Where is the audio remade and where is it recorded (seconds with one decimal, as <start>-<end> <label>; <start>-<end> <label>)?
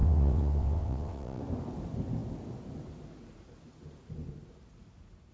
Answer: 0.0-1.4 remade; 1.4-5.3 recorded